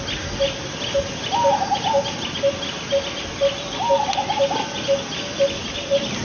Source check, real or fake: real